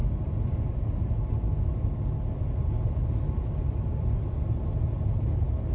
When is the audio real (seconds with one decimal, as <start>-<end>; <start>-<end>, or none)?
0.0-5.7